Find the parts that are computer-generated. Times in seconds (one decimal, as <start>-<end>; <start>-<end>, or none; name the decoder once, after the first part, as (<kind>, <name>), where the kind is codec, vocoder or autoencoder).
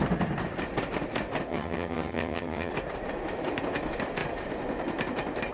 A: 1.5-2.7 (vocoder, HiFi-GAN)